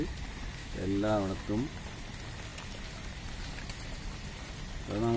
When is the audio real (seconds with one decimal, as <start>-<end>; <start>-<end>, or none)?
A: 0.0-0.6; 1.4-5.2

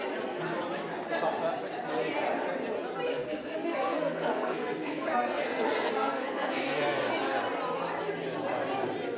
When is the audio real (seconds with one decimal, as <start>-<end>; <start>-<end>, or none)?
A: 0.0-3.1; 7.1-9.2

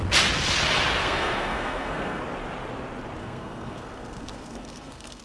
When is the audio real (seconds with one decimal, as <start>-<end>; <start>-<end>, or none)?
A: 0.0-1.0; 2.2-3.2

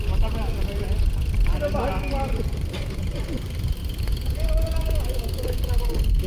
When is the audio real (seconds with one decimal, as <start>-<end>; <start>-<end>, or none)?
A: 0.0-6.3

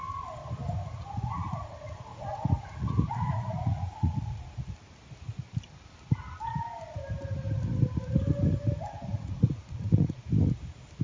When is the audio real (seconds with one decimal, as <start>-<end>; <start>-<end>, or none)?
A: 0.0-0.8; 1.7-2.1; 4.7-9.1; 10.3-11.0

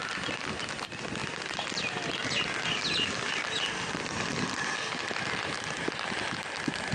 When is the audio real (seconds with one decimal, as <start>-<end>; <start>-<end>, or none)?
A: 0.0-6.9

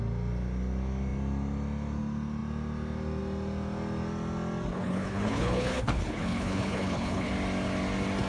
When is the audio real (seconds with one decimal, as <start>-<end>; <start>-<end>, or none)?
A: 0.0-4.7; 7.3-8.3